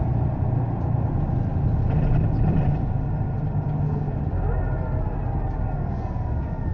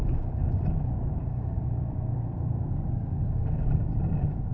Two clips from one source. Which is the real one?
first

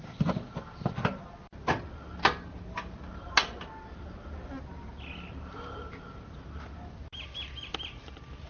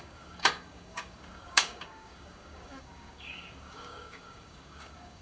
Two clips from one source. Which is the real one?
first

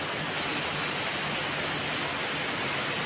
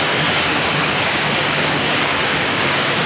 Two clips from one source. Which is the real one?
first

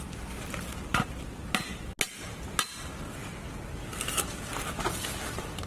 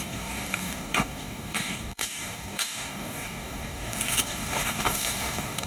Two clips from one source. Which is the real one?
first